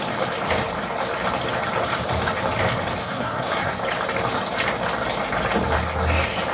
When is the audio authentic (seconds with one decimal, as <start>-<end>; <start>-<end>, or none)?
0.0-3.0; 3.7-6.5